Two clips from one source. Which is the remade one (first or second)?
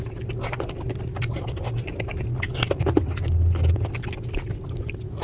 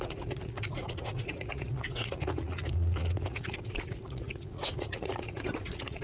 second